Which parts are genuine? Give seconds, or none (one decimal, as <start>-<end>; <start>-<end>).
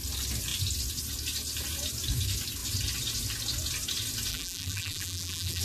0.0-4.3